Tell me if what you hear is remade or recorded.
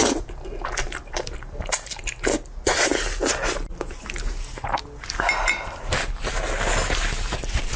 recorded